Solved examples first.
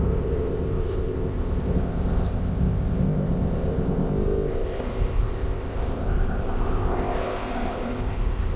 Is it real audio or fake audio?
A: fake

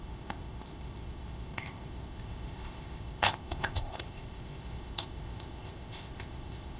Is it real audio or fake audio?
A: fake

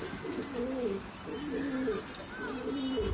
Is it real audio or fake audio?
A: real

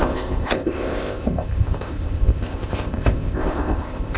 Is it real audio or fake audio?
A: fake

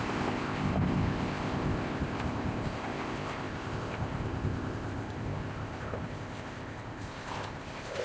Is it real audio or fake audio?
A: fake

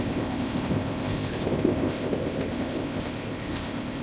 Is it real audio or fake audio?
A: fake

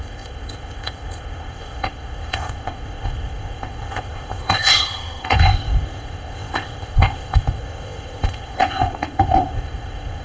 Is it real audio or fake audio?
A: fake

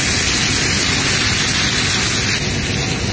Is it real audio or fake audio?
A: real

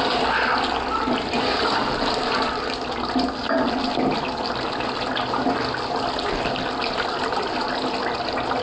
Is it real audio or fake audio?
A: real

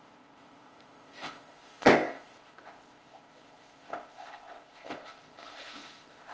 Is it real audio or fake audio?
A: fake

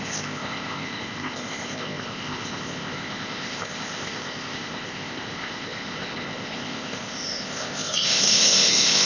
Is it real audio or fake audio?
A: fake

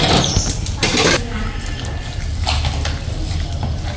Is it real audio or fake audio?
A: real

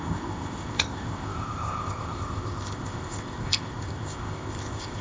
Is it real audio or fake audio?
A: fake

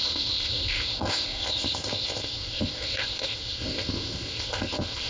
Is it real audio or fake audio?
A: fake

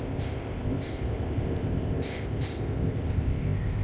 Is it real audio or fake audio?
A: fake